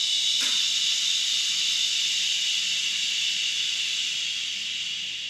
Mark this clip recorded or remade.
recorded